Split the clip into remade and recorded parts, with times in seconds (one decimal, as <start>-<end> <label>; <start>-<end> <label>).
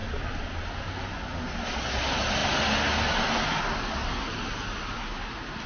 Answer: 0.0-5.7 recorded